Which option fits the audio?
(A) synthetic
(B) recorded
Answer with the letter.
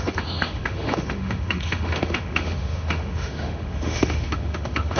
A